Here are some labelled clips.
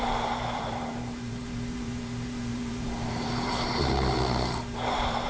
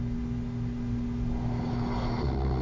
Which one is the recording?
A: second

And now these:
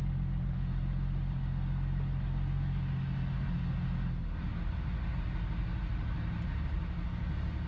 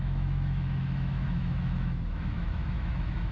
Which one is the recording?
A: first